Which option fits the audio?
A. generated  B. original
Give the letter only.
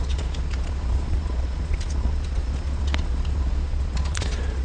A